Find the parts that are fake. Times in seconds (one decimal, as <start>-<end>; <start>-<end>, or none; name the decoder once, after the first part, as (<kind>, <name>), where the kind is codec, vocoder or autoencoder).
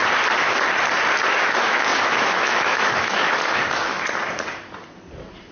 1.3-3.9 (autoencoder, DAC-VAE)